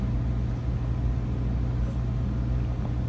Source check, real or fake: real